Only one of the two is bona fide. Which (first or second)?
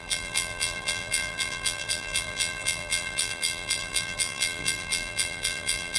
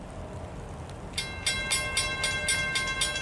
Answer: second